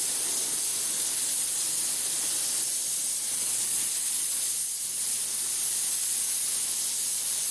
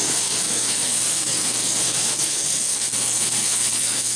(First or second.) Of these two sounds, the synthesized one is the second